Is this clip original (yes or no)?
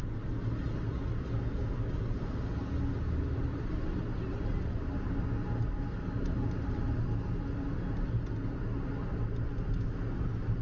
yes